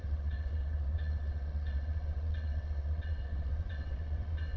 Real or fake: fake